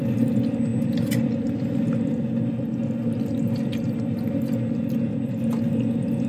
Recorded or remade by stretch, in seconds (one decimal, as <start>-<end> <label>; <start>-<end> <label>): 0.0-6.3 recorded